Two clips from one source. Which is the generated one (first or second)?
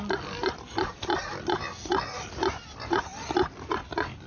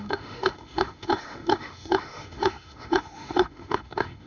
second